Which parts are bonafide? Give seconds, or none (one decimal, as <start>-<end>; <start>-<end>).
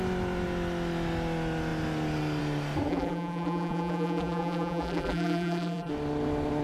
0.0-2.9; 5.9-6.6